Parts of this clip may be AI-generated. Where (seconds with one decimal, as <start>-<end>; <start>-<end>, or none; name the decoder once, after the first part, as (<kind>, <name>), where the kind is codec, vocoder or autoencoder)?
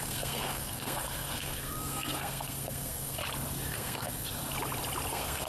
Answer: 0.0-3.2 (codec, SNAC); 3.7-4.4; 5.1-5.5